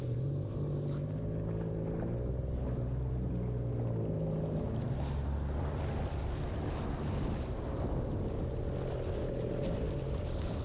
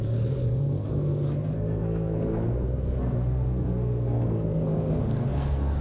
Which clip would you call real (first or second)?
first